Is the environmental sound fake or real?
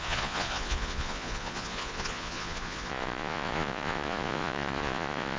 fake